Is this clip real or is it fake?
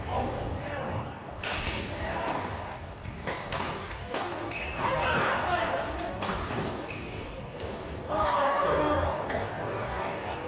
fake